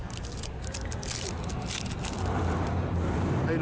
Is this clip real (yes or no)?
yes